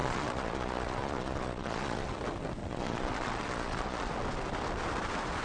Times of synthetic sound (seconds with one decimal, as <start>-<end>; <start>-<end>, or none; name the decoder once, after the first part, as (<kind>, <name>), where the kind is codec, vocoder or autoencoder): 0.0-2.1 (vocoder, Vocos); 2.6-4.1